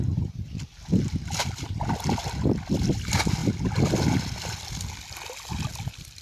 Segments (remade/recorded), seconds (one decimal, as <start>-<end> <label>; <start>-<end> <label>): 0.0-6.2 recorded